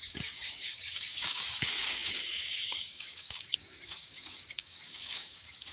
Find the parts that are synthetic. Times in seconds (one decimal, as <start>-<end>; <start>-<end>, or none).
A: 0.0-5.7